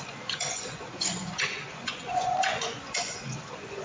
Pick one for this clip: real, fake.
fake